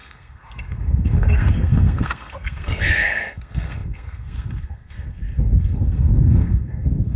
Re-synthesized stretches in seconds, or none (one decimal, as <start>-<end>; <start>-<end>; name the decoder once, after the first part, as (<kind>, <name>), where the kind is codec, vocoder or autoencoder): 0.0-7.2 (codec, SNAC)